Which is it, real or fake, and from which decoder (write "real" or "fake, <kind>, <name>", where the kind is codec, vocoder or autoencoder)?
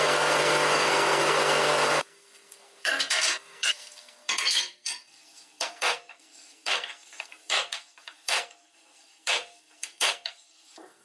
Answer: fake, codec, SNAC